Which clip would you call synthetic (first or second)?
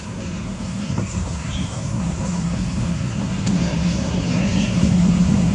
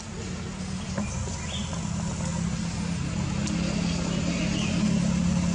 first